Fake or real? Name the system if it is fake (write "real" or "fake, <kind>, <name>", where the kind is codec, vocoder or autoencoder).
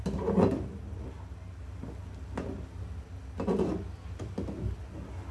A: real